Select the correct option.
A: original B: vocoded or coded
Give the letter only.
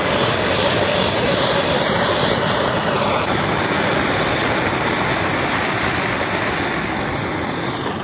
A